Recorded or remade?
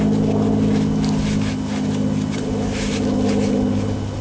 recorded